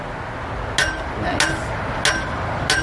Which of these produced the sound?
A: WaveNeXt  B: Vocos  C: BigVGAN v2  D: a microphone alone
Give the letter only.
D